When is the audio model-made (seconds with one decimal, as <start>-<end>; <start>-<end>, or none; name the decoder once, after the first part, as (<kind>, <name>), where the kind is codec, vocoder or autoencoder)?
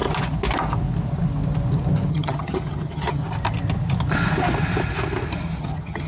2.1-3.2 (vocoder, HiFi-GAN); 5.6-6.1